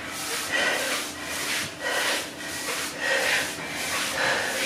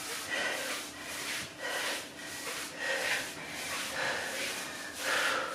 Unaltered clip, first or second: first